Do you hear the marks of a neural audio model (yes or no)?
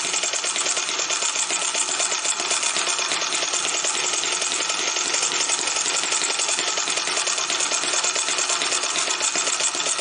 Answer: no